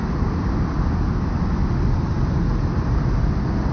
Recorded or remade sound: recorded